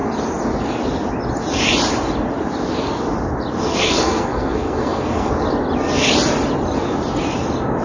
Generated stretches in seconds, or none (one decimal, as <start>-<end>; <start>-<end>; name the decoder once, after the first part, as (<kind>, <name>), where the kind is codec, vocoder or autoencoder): 3.7-5.3 (codec, SNAC)